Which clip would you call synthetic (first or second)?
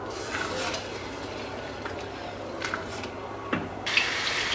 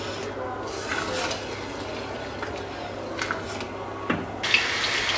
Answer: first